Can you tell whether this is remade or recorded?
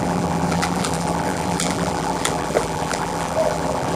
remade